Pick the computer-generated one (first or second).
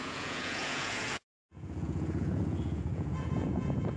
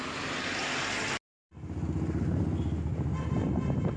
first